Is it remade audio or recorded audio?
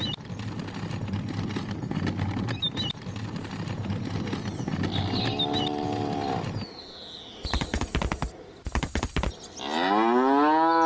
recorded